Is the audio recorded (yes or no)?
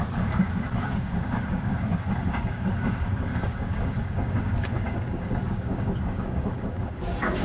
no